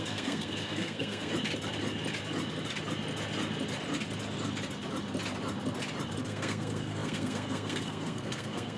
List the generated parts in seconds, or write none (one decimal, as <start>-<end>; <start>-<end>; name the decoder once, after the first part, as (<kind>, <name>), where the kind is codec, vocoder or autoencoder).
0.0-1.3 (codec, SNAC); 6.2-8.8